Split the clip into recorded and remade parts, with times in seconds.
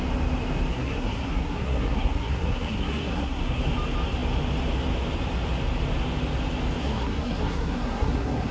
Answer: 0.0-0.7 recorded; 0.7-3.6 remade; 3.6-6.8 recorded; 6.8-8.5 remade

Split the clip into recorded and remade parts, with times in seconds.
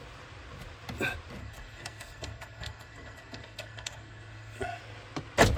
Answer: 0.0-1.4 recorded; 1.4-4.8 remade; 4.8-5.6 recorded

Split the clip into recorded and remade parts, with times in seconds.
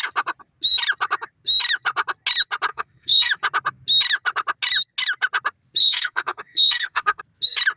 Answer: 0.0-2.7 recorded; 2.7-3.3 remade; 3.3-5.8 recorded; 5.8-7.2 remade; 7.2-7.8 recorded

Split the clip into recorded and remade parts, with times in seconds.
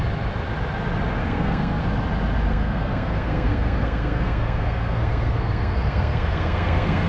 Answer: 0.0-1.2 recorded; 1.2-1.8 remade; 1.8-2.5 recorded; 2.5-7.1 remade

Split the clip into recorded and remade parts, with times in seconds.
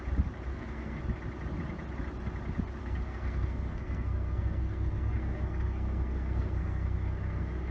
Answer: 0.0-0.5 recorded; 0.5-1.0 remade; 1.0-2.8 recorded; 2.8-7.7 remade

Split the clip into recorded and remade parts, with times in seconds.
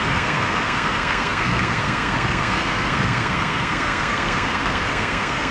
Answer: 0.0-5.5 remade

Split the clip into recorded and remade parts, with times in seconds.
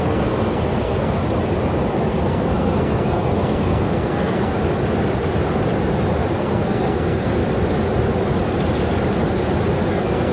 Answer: 0.0-1.2 remade; 1.2-2.1 recorded; 2.1-4.5 remade; 4.5-6.3 recorded; 6.3-7.4 remade; 7.4-9.9 recorded; 9.9-10.3 remade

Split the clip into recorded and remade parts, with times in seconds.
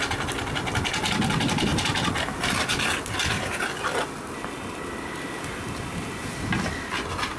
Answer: 0.0-7.4 recorded